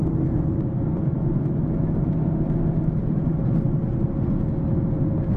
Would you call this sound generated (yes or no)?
no